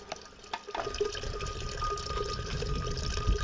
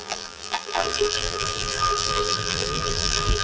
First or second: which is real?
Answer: first